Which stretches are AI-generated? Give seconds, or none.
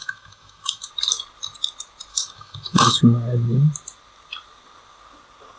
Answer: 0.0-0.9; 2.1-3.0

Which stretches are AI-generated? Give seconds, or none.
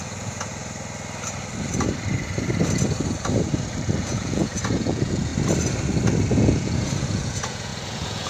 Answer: 0.0-0.5; 4.0-5.3; 6.3-8.3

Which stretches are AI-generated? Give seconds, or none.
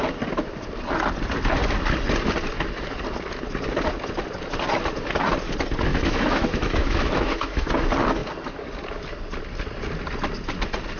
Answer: 5.9-7.7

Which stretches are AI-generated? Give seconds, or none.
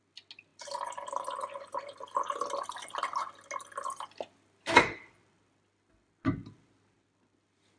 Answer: 0.5-1.8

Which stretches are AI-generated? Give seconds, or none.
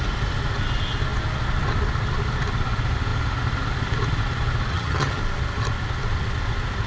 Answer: 4.7-5.2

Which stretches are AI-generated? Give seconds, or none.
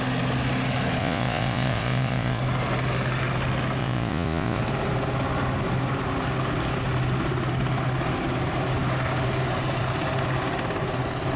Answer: 1.0-2.4; 3.8-4.6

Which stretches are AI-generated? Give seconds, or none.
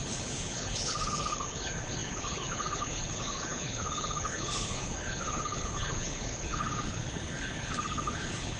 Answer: 0.0-8.6